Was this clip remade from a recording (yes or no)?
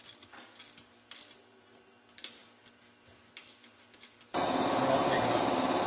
no